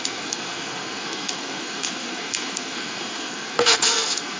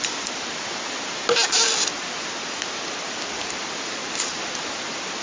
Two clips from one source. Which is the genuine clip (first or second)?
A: second